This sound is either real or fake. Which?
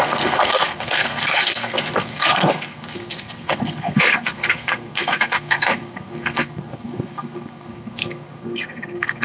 fake